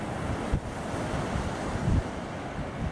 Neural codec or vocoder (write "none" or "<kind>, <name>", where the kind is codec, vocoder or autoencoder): none